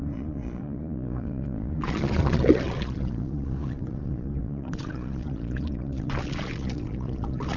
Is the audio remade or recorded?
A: remade